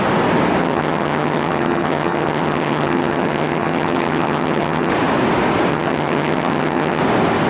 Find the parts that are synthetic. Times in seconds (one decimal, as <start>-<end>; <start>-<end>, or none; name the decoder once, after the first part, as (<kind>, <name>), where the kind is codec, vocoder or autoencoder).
0.6-4.9 (vocoder, HiFi-GAN); 5.7-7.0